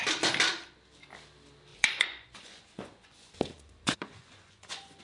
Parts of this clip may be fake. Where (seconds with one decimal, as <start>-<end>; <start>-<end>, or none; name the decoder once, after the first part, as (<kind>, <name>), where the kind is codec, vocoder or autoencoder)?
1.7-5.0 (vocoder, Vocos)